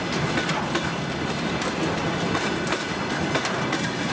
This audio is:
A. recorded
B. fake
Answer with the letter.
A